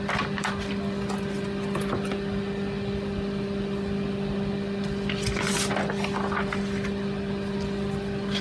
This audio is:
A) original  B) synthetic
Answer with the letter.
A